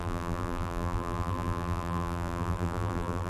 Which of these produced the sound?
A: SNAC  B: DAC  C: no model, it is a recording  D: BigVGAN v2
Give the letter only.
D